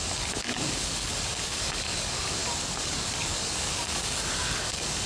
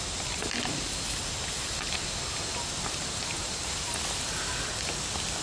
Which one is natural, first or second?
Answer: second